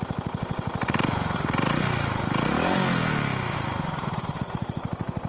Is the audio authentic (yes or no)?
yes